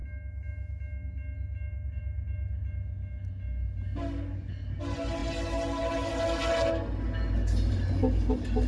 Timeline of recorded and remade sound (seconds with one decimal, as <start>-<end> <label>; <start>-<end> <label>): 0.0-8.7 recorded